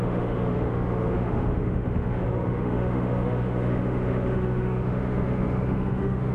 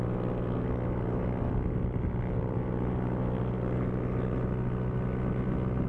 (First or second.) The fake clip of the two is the first